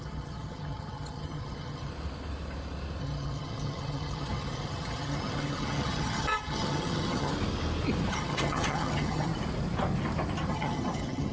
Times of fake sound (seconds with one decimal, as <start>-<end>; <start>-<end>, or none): 0.0-1.9; 3.0-7.3; 8.1-9.3; 10.5-11.3